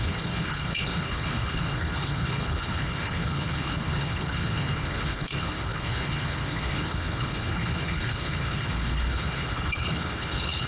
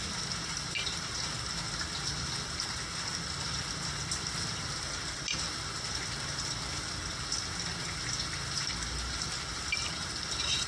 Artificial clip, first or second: first